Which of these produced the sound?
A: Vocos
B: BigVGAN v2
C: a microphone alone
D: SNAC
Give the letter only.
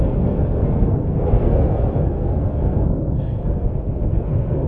D